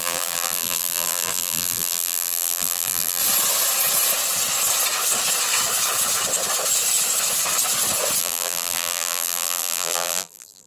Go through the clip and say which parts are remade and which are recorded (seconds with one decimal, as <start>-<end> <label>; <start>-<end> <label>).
0.0-3.2 remade; 3.2-8.2 recorded; 8.2-10.7 remade

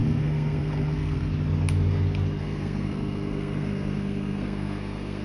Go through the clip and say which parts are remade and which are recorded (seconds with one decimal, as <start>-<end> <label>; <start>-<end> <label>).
0.0-1.3 remade; 1.3-2.4 recorded; 2.4-5.2 remade

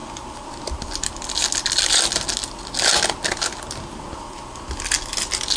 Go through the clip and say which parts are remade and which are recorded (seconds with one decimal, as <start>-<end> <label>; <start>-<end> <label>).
0.0-5.6 recorded

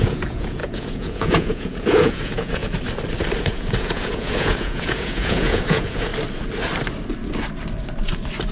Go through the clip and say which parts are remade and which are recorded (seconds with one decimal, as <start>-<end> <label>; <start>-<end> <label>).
0.0-2.6 remade; 2.6-3.4 recorded; 3.4-6.1 remade; 6.1-8.5 recorded

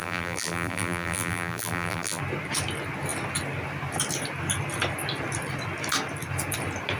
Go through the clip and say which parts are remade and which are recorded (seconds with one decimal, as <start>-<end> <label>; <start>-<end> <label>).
0.0-2.2 remade; 2.2-7.0 recorded

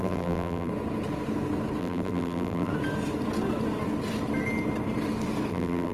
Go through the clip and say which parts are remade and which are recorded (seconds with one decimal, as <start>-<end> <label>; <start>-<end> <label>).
0.0-0.7 remade; 0.7-1.8 recorded; 1.8-2.7 remade; 2.7-5.5 recorded; 5.5-5.9 remade

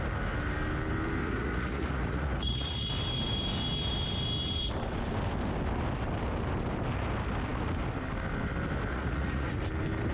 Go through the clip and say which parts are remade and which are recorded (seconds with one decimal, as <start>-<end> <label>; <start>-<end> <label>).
0.0-1.2 recorded; 1.2-2.9 remade; 2.9-8.9 recorded; 8.9-9.6 remade; 9.6-10.1 recorded

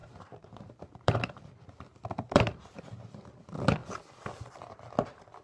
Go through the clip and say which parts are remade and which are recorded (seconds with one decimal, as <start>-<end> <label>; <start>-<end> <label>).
0.0-3.2 remade; 3.2-5.4 recorded